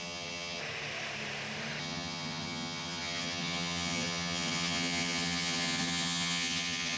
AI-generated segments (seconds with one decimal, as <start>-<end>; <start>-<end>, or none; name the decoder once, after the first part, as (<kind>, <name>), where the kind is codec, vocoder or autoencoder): 0.0-0.6 (vocoder, HiFi-GAN); 1.8-7.0